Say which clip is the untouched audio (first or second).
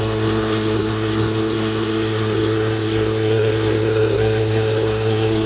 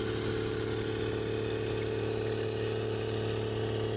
second